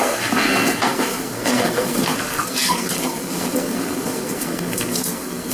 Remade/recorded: remade